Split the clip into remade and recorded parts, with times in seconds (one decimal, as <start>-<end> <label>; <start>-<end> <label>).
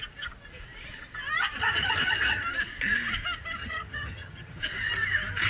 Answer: 0.0-1.6 recorded; 1.6-2.4 remade; 2.4-3.6 recorded; 3.6-4.6 remade; 4.6-5.5 recorded